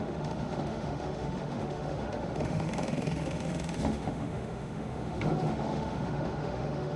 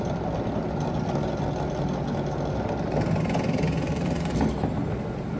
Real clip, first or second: second